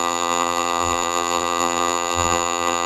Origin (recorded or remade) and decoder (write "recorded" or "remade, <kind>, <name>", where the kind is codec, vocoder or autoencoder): remade, vocoder, BigVGAN v2